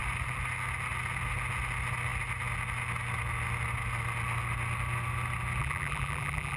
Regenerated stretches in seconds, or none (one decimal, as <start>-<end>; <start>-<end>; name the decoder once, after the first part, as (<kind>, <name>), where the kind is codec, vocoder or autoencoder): 5.6-6.6 (vocoder, BigVGAN v2)